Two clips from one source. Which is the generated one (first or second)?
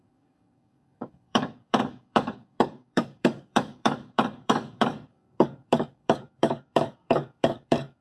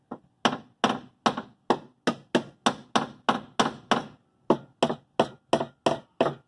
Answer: first